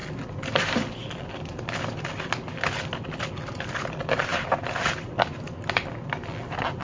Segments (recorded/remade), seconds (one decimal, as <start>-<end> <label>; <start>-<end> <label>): 0.0-6.8 recorded